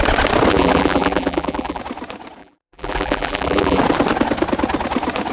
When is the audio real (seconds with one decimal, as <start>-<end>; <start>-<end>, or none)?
0.0-0.5; 1.8-2.4; 3.8-5.3